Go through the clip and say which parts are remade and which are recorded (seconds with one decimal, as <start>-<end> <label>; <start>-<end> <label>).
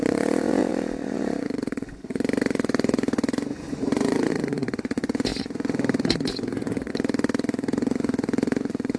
0.0-9.0 remade